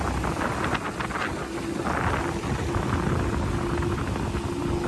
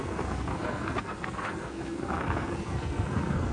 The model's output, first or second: second